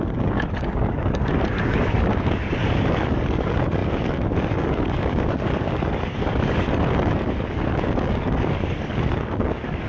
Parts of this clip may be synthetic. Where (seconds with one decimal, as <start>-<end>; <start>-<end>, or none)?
0.0-9.9